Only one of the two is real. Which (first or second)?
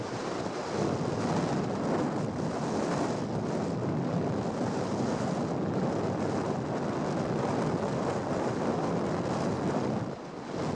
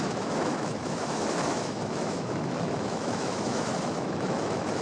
first